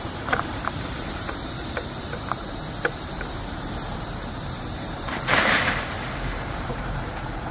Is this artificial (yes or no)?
yes